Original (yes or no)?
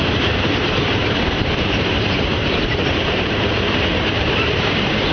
no